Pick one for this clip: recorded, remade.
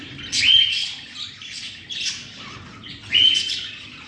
recorded